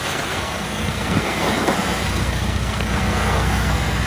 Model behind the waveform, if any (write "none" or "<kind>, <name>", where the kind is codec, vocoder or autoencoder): codec, SNAC